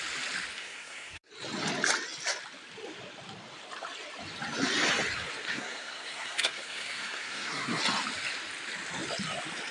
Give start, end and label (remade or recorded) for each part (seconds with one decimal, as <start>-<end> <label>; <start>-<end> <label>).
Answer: 0.0-0.6 recorded; 0.6-1.3 remade; 1.3-5.5 recorded; 5.5-7.8 remade; 7.8-9.7 recorded